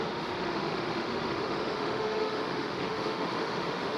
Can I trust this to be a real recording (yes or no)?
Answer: no